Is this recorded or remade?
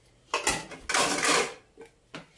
recorded